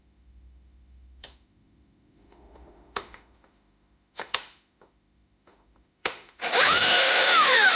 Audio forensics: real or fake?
fake